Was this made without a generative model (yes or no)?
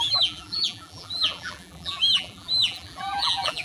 no